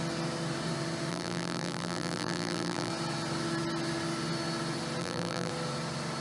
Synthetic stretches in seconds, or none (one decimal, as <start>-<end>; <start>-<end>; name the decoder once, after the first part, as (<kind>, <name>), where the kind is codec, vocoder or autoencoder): 1.1-2.9 (vocoder, BigVGAN v2); 5.0-5.5